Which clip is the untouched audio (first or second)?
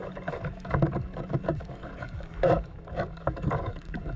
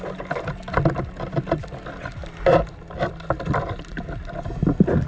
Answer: second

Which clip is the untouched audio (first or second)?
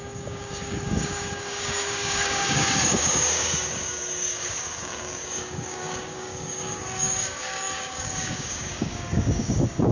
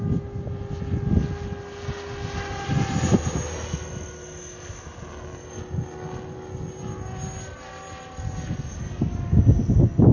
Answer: second